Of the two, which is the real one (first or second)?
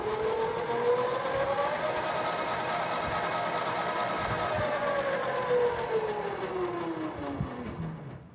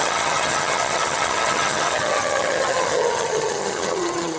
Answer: first